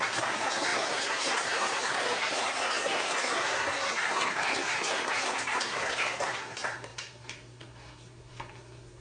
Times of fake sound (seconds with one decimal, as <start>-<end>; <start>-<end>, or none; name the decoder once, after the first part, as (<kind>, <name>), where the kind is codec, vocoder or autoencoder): 0.0-9.0 (codec, SNAC)